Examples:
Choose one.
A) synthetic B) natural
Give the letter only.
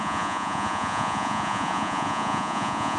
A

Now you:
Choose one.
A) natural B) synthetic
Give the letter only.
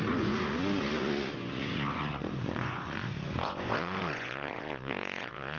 B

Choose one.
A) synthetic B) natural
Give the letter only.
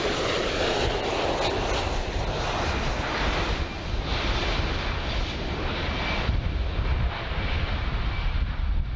B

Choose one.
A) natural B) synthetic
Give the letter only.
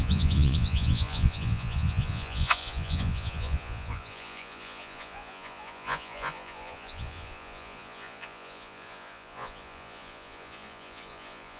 B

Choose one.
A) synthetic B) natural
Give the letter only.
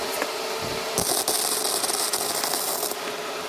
B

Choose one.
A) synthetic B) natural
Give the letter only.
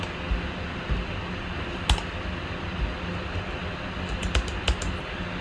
B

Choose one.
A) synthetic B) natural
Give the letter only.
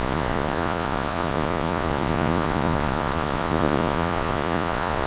A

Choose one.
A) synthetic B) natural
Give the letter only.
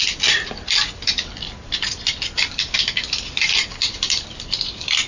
B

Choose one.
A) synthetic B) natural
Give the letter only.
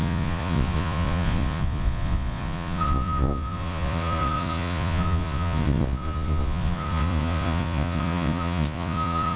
A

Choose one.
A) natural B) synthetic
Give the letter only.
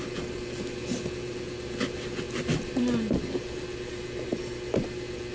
A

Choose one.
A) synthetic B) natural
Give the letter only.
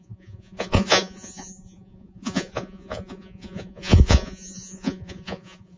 A